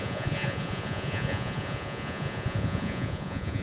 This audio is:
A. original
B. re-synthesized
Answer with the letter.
B